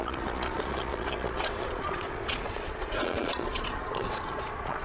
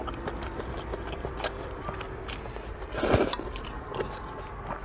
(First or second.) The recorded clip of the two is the second